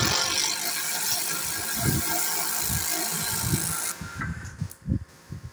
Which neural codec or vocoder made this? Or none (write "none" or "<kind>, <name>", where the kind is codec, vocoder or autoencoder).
none